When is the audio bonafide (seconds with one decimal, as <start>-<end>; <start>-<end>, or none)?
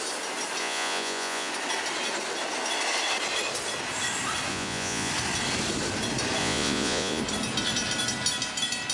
0.0-0.6; 1.5-4.5; 5.1-6.4; 7.2-8.9